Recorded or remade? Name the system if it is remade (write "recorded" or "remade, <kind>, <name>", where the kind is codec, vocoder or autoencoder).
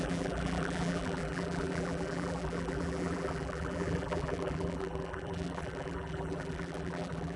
remade, vocoder, BigVGAN v2